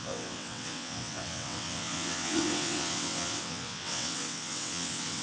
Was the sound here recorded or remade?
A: remade